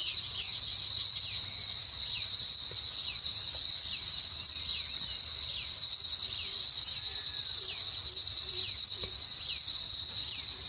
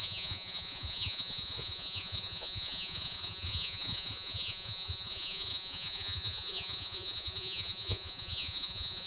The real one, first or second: first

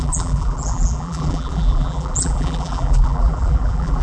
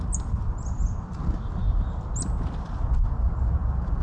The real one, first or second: second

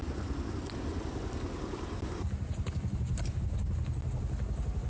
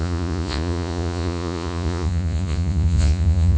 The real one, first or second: first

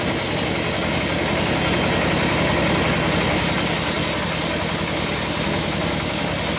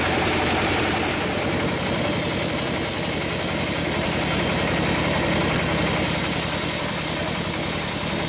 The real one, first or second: first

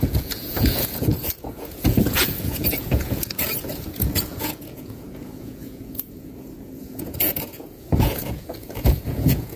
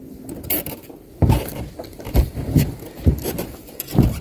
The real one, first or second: second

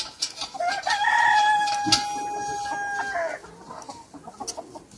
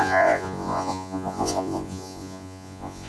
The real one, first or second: first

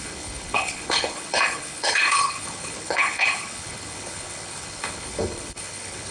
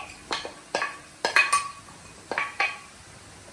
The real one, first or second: second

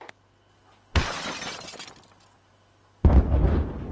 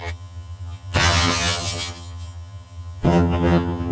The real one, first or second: first